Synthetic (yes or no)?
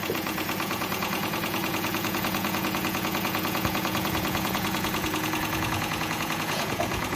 yes